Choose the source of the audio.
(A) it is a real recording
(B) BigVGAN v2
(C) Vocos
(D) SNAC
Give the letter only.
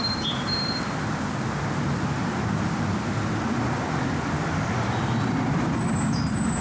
A